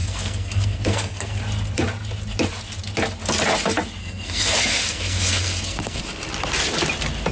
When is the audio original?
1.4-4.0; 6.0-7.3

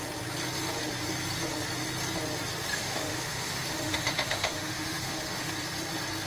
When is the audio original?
0.0-2.7; 5.5-6.3

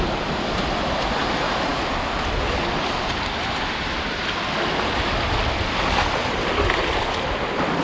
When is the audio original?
0.0-7.8

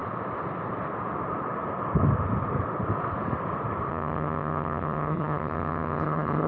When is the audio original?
0.0-3.9

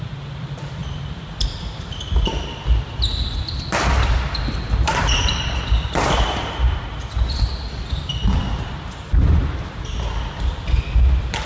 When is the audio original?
0.0-11.5